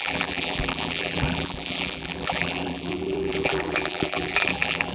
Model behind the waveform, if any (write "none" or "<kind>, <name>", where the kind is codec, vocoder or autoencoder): vocoder, BigVGAN v2